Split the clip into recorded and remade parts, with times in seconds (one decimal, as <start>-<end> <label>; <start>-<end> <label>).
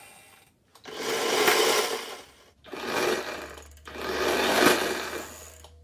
0.0-5.8 recorded